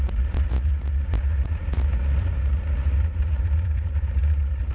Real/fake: fake